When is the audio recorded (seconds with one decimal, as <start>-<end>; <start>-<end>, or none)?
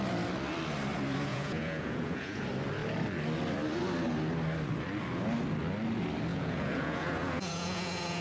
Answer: 0.0-1.3; 2.4-6.3